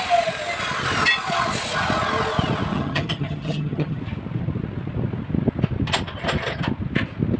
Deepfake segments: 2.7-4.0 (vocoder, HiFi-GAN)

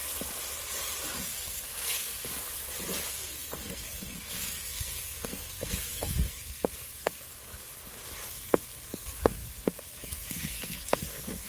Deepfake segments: 1.2-2.3 (codec, SNAC); 3.1-7.3; 8.3-11.5

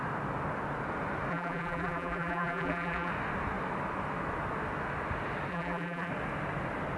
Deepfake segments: 1.3-3.1 (vocoder, BigVGAN v2); 5.5-6.1